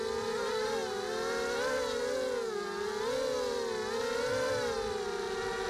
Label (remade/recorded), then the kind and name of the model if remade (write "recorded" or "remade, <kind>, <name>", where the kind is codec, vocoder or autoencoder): recorded